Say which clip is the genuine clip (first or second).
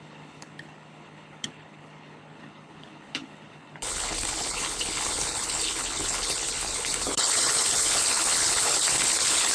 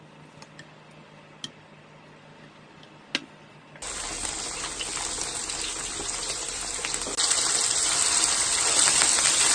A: second